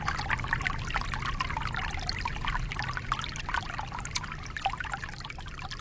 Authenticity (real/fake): real